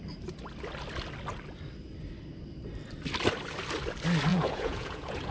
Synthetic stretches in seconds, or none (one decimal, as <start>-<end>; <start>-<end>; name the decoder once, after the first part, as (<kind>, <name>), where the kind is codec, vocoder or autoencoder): 4.3-5.3 (vocoder, Vocos)